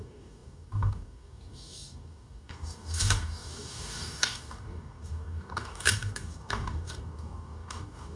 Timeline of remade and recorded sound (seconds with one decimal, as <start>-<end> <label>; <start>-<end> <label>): 0.0-8.2 remade